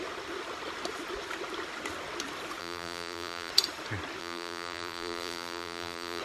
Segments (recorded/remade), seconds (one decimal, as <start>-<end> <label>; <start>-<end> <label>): 0.0-2.6 recorded; 2.6-3.5 remade; 3.5-4.2 recorded; 4.2-6.2 remade